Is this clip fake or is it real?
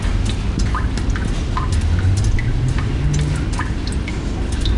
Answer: real